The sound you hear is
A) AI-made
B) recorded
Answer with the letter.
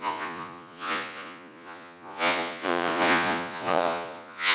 A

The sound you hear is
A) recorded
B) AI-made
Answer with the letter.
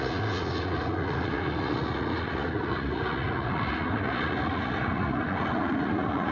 B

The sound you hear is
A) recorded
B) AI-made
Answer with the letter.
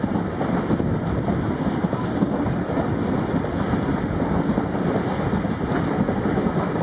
A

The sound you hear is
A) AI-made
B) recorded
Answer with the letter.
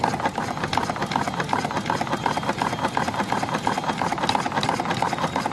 B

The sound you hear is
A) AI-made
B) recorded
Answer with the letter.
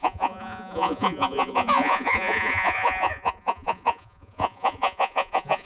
A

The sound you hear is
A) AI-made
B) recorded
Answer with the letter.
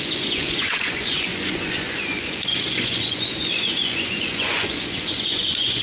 A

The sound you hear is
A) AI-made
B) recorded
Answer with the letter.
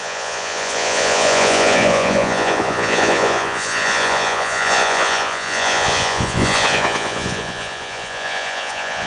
A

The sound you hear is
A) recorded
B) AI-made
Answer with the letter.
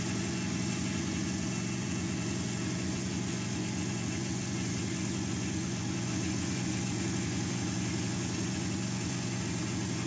B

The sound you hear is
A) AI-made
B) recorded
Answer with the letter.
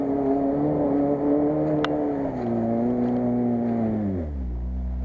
B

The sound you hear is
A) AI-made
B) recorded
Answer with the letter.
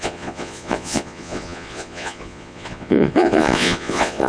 A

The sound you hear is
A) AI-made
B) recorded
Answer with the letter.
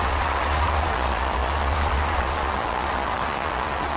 A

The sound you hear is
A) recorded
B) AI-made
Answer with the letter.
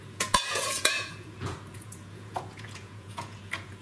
B